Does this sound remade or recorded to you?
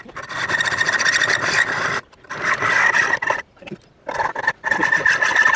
remade